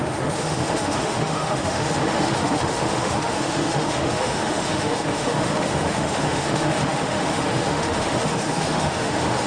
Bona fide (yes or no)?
no